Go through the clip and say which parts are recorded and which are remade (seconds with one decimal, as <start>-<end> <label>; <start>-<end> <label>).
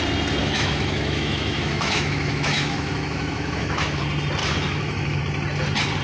0.0-0.4 recorded; 0.4-4.0 remade; 4.0-4.4 recorded; 4.4-5.2 remade; 5.2-6.0 recorded